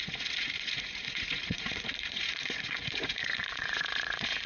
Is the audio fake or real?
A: fake